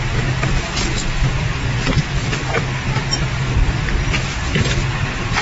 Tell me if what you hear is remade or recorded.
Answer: remade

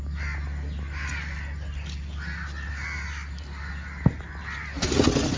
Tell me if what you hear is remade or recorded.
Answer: recorded